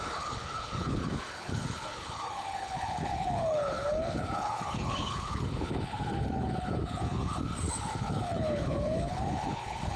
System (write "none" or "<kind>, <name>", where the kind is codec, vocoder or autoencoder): codec, HILCodec